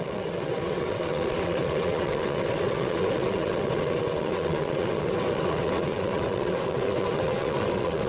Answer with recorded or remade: remade